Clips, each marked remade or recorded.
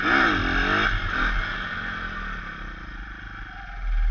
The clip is recorded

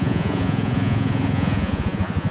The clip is remade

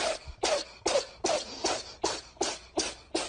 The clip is recorded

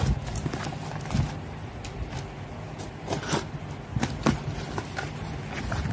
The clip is recorded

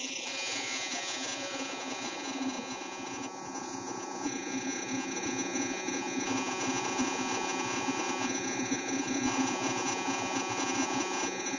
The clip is remade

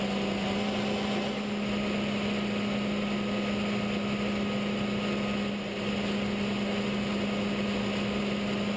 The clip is recorded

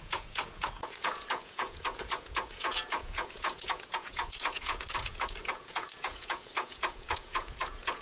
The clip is remade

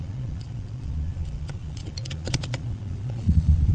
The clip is remade